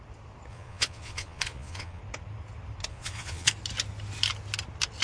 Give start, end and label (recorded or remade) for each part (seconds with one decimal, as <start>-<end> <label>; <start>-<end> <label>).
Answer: 0.0-0.5 recorded; 0.5-2.0 remade; 2.0-2.9 recorded; 2.9-3.5 remade; 3.5-5.0 recorded